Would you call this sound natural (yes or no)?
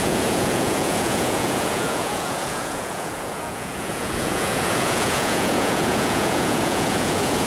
no